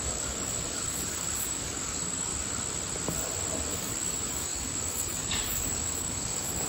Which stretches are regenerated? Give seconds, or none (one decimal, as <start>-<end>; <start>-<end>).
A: 0.0-2.3; 3.7-6.7

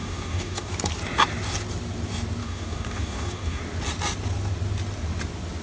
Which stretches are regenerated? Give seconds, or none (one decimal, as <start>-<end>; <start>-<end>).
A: 0.0-0.7; 2.4-3.6

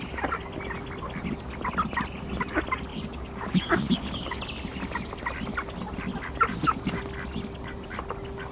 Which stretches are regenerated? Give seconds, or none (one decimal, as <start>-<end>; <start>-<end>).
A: 2.9-4.4; 6.5-7.0

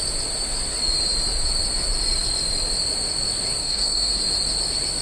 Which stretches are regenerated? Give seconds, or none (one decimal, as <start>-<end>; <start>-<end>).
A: 3.6-4.2

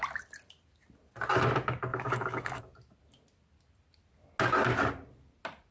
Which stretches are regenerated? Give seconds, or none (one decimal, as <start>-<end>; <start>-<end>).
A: 1.9-2.6

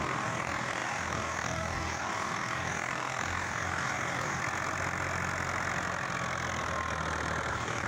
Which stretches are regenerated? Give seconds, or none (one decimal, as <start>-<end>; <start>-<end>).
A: 0.0-4.4; 7.5-7.9